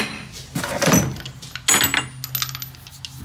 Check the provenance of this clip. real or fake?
real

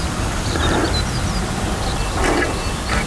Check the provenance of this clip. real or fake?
real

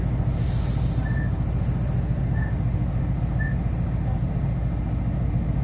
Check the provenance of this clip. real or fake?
real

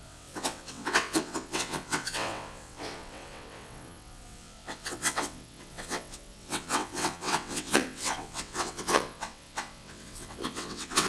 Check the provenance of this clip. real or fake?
fake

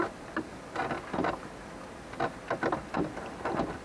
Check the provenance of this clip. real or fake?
real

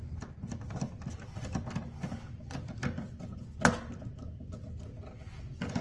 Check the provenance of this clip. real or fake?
real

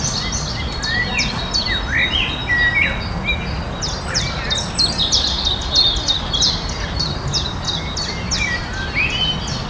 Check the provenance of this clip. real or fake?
real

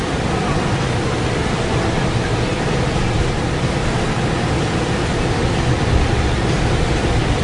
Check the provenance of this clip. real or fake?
real